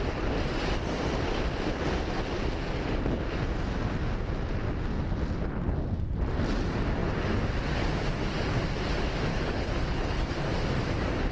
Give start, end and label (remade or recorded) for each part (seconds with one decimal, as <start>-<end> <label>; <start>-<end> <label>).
0.0-9.3 recorded; 9.3-10.3 remade; 10.3-11.3 recorded